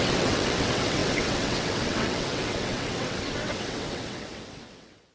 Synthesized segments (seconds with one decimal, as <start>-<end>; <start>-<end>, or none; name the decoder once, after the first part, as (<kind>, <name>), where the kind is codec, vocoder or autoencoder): 0.0-5.1 (vocoder, WaveNeXt)